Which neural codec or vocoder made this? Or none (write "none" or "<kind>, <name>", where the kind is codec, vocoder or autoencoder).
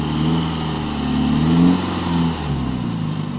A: none